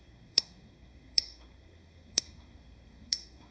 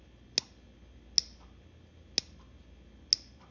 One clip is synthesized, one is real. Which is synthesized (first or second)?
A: first